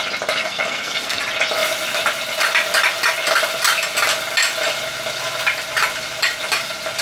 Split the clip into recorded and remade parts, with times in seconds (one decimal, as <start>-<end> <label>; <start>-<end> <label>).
0.0-0.4 recorded; 0.4-1.2 remade; 1.2-7.0 recorded